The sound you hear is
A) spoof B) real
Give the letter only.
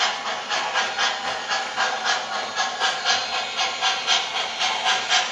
B